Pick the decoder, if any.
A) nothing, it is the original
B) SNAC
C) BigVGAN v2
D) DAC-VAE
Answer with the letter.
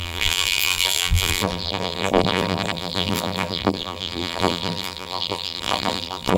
C